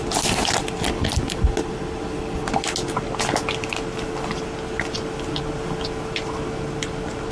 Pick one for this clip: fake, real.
real